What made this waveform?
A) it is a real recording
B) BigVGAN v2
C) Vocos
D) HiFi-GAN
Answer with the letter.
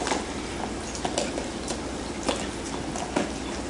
A